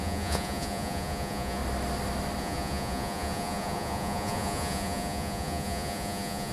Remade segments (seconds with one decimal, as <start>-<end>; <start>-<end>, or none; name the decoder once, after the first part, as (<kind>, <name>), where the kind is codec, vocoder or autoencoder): 0.0-1.6 (vocoder, Vocos); 2.4-6.5